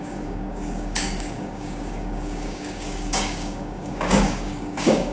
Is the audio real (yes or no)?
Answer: no